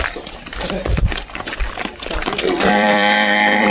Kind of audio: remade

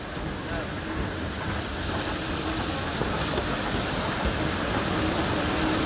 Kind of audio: recorded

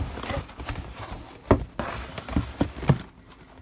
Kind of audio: recorded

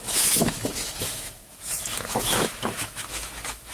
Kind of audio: remade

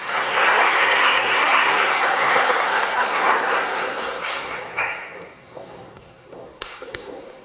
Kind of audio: remade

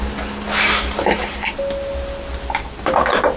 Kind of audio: recorded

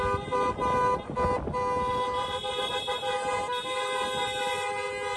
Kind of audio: recorded